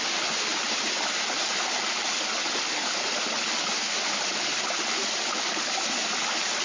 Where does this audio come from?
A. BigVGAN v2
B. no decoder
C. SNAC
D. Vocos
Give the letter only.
B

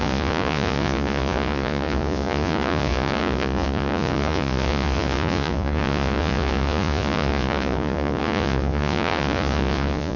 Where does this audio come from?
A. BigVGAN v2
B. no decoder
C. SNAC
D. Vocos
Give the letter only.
D